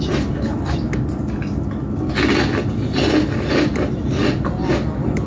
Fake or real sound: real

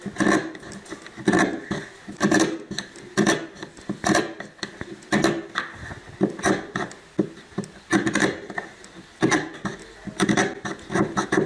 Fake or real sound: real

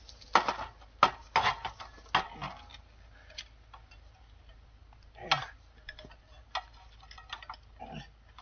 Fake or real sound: real